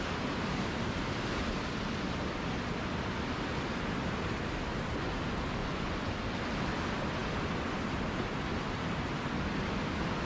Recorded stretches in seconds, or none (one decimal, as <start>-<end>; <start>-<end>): 0.0-5.6; 6.1-10.2